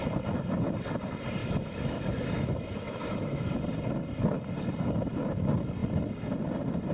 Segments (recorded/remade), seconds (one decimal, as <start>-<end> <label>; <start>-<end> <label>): 0.0-1.4 recorded; 1.4-3.6 remade; 3.6-6.9 recorded